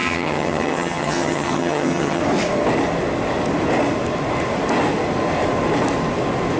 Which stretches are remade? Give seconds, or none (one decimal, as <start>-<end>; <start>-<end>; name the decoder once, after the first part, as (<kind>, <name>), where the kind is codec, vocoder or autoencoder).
0.0-2.2 (vocoder, HiFi-GAN)